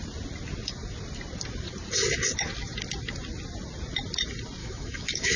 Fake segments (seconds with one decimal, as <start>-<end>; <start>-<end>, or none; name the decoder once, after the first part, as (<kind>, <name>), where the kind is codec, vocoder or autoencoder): 4.6-5.4 (autoencoder, DAC-VAE)